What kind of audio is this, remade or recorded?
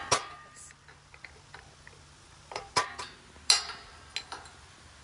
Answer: recorded